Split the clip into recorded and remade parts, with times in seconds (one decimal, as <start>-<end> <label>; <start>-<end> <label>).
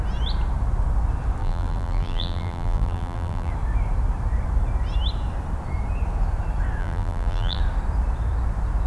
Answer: 0.0-1.4 recorded; 1.4-3.5 remade; 3.5-6.8 recorded; 6.8-7.6 remade; 7.6-8.9 recorded